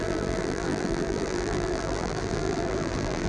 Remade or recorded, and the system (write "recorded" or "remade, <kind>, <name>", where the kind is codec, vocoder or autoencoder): remade, vocoder, BigVGAN v2